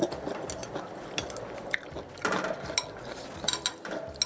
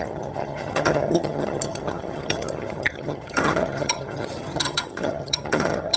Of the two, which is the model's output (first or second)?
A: second